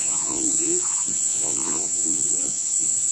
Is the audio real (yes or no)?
no